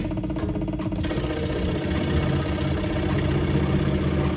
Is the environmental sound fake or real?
real